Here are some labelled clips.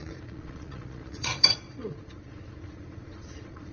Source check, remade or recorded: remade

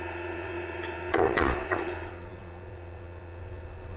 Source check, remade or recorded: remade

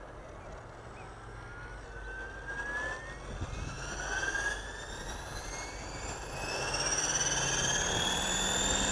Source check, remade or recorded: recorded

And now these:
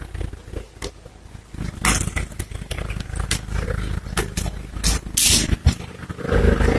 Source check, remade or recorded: recorded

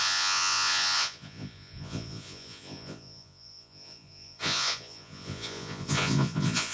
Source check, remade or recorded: remade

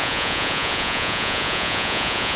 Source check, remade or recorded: remade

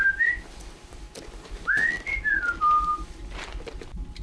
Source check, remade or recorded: recorded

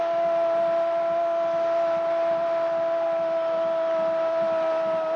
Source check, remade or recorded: recorded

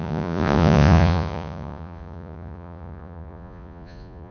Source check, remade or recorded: remade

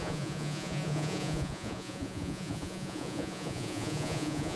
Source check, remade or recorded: remade